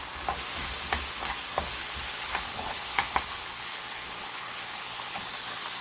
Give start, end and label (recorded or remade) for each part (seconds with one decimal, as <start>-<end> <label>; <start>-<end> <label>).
0.0-1.8 recorded; 1.8-5.3 remade; 5.3-5.8 recorded